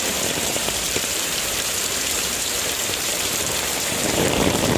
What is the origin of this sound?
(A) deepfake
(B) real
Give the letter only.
A